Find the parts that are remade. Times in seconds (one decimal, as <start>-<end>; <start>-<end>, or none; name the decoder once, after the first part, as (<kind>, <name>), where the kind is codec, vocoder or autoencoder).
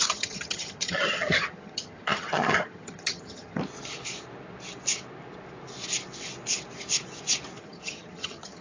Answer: 0.0-3.6 (vocoder, HiFi-GAN); 7.6-8.6